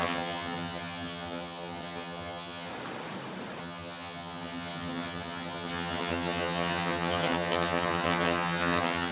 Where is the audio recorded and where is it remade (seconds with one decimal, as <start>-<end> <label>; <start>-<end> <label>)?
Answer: 0.0-2.7 remade; 2.7-3.6 recorded; 3.6-9.1 remade